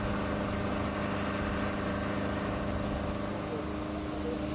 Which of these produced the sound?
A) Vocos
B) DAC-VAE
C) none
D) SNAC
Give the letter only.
C